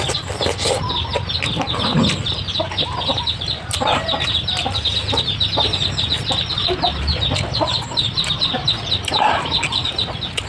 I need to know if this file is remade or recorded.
recorded